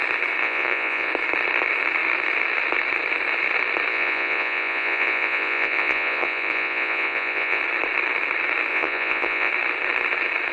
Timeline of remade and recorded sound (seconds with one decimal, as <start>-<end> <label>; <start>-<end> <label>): 0.0-0.4 recorded; 0.4-1.1 remade; 1.1-3.9 recorded; 3.9-7.6 remade; 7.6-8.7 recorded; 8.7-9.5 remade; 9.5-10.5 recorded